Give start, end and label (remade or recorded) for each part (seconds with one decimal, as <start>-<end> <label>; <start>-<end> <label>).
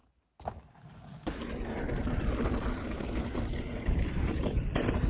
0.0-0.6 recorded; 0.6-5.1 remade